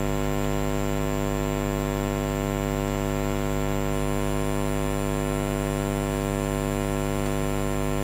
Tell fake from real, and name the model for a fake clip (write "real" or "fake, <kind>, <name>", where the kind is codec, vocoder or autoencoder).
real